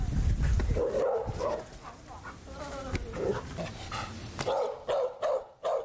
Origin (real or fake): real